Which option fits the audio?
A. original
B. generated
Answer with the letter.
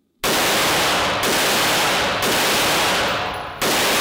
A